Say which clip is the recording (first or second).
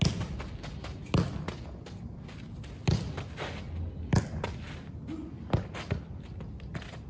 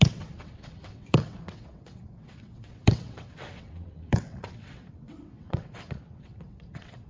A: first